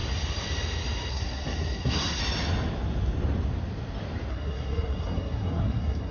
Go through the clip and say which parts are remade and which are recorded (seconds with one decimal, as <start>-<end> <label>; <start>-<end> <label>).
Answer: 0.0-1.1 recorded; 1.1-2.2 remade; 2.2-4.3 recorded; 4.3-6.1 remade